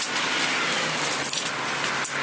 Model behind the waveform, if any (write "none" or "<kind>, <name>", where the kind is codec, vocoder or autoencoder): none